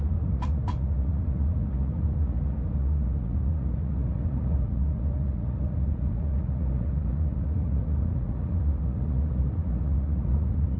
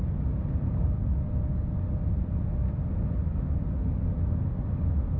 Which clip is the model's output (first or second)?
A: first